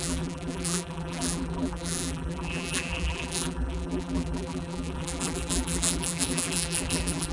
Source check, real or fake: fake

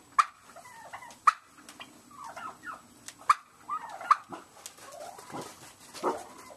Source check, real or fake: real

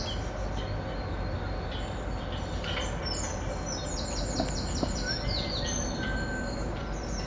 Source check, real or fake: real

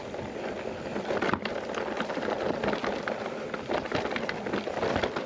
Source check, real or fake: real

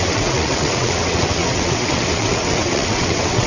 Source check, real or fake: fake